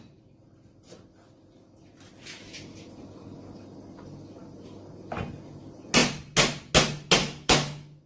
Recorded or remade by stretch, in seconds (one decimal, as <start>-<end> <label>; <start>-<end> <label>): 0.0-7.2 recorded; 7.2-8.1 remade

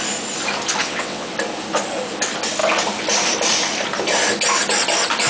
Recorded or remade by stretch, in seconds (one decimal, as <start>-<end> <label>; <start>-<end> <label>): 0.0-0.8 recorded; 0.8-1.3 remade; 1.3-5.3 recorded

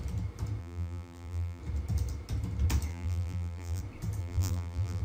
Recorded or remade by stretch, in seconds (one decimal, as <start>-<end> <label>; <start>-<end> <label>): 0.0-0.6 recorded; 0.6-1.6 remade; 1.6-2.9 recorded; 2.9-3.8 remade; 3.8-4.2 recorded; 4.2-5.0 remade

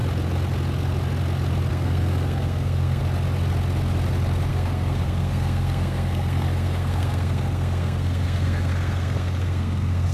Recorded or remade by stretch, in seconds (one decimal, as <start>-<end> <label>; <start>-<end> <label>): 0.0-1.7 recorded; 1.7-3.0 remade; 3.0-4.5 recorded; 4.5-10.1 remade

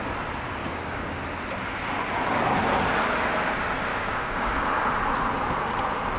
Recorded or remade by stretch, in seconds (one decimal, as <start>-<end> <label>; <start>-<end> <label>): 0.0-0.6 recorded; 0.6-1.2 remade; 1.2-3.9 recorded; 3.9-4.5 remade; 4.5-6.2 recorded